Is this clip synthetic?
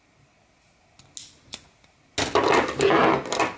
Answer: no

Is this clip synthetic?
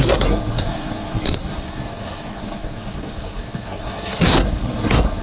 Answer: yes